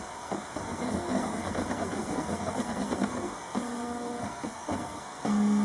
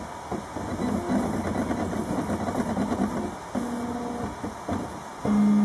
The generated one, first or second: first